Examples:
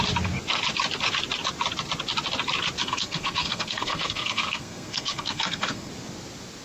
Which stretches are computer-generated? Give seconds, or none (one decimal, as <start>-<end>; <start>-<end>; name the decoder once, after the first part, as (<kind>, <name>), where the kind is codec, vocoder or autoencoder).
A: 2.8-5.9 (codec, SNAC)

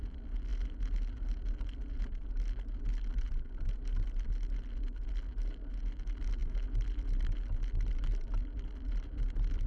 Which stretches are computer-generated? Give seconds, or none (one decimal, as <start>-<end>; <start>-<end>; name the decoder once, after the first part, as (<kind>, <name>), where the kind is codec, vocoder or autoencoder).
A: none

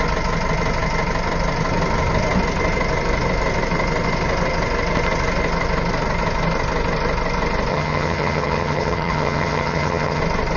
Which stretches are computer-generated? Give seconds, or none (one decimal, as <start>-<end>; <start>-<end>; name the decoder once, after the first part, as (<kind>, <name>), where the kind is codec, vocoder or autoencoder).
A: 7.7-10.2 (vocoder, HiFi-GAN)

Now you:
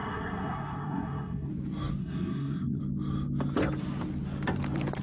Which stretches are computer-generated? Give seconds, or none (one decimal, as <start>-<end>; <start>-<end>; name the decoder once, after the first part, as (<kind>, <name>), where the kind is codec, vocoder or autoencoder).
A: 0.0-1.5 (codec, SNAC); 2.0-2.8

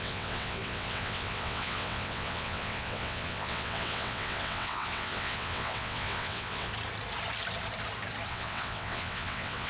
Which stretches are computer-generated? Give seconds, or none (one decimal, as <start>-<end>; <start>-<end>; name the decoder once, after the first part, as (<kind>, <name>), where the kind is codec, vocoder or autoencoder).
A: 0.0-6.7 (vocoder, WaveNeXt); 8.3-9.7

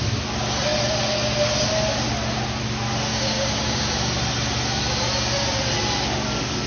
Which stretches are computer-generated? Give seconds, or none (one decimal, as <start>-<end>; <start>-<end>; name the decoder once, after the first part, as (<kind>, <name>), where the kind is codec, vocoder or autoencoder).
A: 3.1-3.9 (codec, DAC)